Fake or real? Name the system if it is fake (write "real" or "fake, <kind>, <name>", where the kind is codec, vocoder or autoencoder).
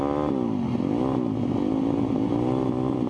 real